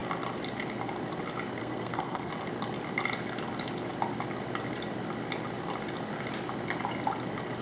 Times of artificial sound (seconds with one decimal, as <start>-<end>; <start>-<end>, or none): 1.6-2.3